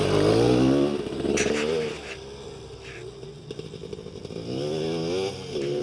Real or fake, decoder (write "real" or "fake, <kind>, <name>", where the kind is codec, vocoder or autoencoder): real